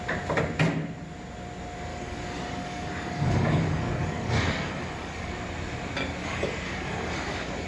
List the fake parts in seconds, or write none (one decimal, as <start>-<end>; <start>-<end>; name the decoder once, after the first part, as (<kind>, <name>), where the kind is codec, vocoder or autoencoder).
1.9-5.3 (codec, DAC); 6.2-7.7